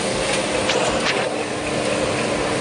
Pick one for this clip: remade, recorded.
recorded